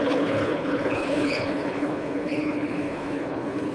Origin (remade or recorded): remade